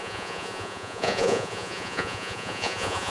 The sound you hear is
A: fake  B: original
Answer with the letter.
A